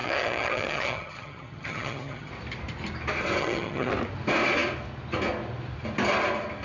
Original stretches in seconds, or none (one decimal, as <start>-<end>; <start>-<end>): 2.3-3.4; 3.9-6.6